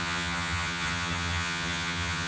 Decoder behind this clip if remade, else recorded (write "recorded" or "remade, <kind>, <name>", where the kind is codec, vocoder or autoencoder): remade, vocoder, HiFi-GAN